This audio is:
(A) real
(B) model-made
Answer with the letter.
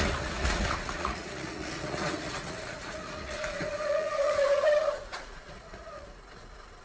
B